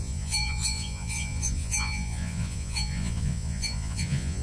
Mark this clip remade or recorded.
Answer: remade